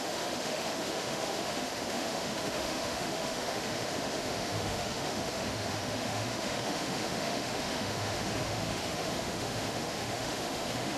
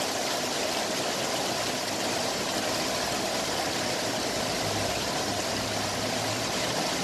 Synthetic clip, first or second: first